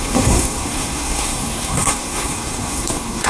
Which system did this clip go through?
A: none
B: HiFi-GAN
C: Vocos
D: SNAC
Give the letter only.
D